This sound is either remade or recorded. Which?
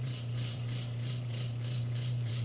remade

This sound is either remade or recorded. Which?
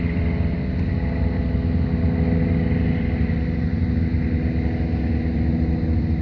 recorded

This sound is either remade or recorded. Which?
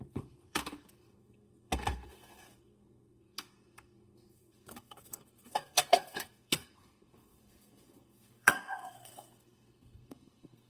remade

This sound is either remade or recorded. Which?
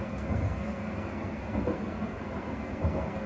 remade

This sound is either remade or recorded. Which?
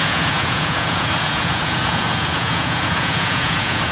remade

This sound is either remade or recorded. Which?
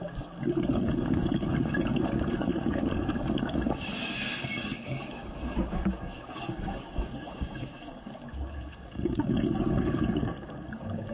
remade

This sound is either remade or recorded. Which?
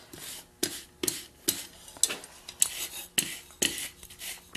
recorded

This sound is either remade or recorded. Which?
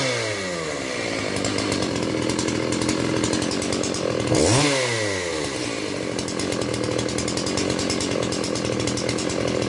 recorded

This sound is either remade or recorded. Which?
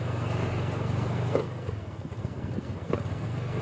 remade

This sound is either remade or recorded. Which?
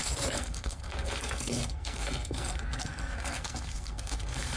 remade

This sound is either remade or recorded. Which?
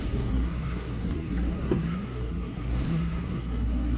remade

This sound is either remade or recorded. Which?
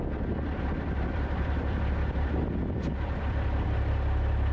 remade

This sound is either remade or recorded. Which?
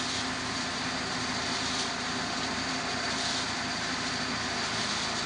recorded